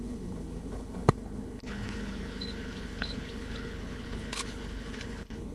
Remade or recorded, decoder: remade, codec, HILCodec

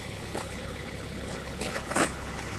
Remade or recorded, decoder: remade, codec, HILCodec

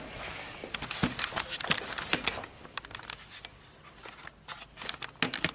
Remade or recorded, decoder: recorded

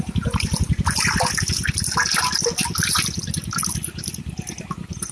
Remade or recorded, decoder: recorded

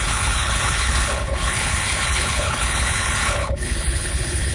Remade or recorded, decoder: remade, codec, HILCodec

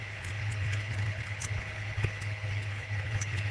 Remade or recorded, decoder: remade, codec, HILCodec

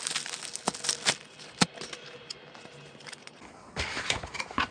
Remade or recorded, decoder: recorded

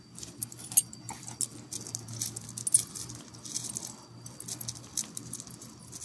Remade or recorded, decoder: recorded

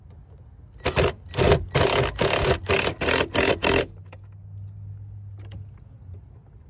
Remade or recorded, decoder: recorded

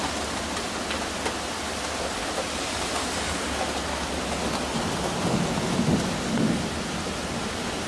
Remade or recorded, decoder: recorded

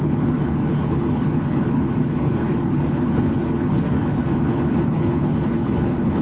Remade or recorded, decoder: remade, codec, HILCodec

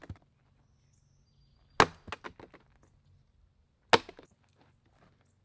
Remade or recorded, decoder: recorded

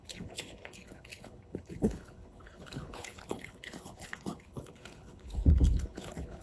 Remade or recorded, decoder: remade, codec, HILCodec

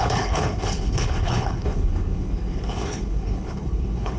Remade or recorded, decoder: remade, codec, HILCodec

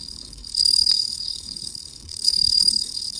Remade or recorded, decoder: remade, codec, HILCodec